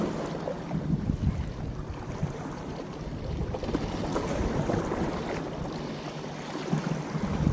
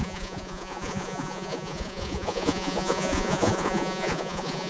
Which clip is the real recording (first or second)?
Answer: first